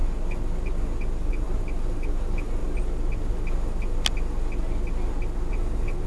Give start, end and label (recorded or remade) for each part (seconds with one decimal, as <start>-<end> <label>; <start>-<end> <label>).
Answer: 0.0-1.3 recorded; 1.3-2.6 remade; 2.6-5.5 recorded; 5.5-6.1 remade